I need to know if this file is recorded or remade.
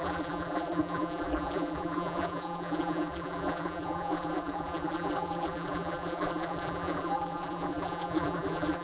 remade